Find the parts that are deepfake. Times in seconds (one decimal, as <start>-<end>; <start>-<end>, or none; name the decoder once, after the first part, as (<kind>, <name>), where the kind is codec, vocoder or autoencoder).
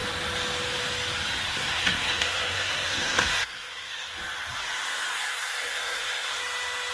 1.5-4.1 (codec, SNAC); 5.1-6.4